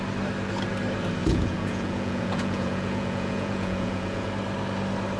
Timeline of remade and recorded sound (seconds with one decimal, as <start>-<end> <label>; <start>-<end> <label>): 0.0-1.2 recorded; 1.2-4.3 remade; 4.3-5.2 recorded